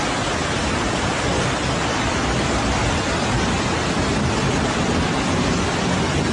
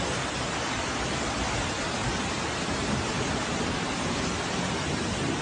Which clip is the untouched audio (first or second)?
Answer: first